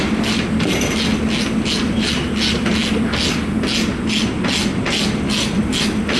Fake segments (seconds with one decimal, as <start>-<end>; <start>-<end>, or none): none